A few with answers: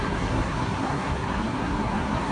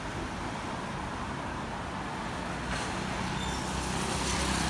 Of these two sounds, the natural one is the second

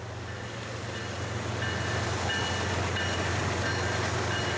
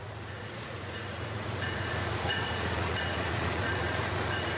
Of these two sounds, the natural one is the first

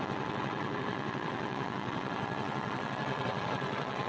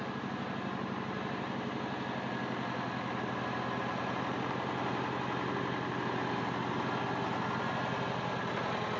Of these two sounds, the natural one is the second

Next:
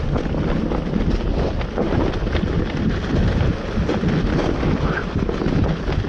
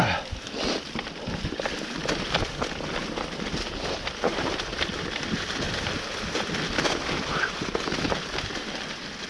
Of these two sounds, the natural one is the first